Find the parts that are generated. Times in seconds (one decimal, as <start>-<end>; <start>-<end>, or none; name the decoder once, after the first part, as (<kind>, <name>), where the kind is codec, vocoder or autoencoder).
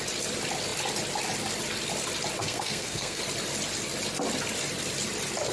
2.4-3.2 (codec, SNAC)